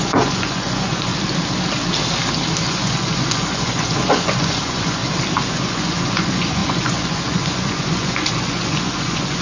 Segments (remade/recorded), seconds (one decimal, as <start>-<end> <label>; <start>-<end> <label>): 0.0-1.1 remade; 1.1-2.7 recorded; 2.7-5.0 remade; 5.0-5.5 recorded; 5.5-9.4 remade